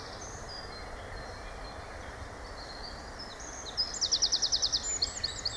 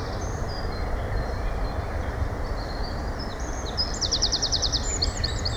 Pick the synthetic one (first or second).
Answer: second